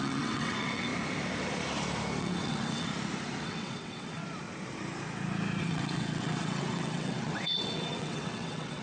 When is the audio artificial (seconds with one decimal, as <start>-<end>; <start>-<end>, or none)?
0.0-0.9; 2.2-2.9; 3.4-4.2; 5.6-8.8